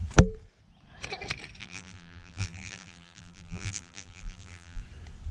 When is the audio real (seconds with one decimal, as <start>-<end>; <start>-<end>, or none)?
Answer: 0.0-1.6; 4.8-5.3